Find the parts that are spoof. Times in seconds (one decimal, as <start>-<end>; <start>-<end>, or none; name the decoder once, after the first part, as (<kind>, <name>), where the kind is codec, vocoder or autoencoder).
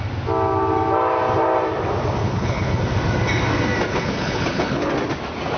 2.2-2.8 (codec, HILCodec); 3.9-4.9